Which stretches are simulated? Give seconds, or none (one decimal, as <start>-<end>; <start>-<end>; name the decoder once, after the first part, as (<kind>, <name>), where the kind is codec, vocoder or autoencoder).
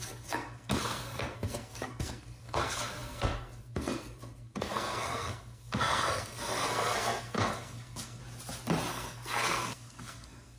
0.0-8.2 (codec, SNAC); 8.9-10.6